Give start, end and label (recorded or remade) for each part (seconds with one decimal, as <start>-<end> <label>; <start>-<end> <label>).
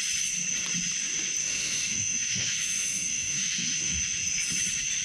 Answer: 0.0-1.4 recorded; 1.4-4.0 remade; 4.0-5.0 recorded